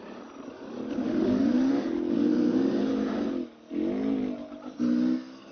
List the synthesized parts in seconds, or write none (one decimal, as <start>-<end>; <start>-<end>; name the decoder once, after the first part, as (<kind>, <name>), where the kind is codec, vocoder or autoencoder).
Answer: 1.0-1.7 (autoencoder, DAC-VAE)